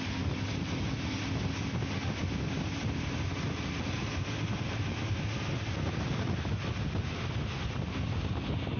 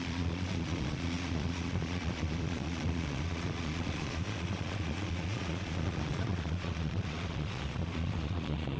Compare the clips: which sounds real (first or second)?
first